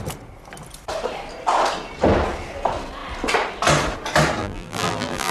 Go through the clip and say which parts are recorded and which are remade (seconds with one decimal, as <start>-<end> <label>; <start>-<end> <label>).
0.0-4.4 recorded; 4.4-5.3 remade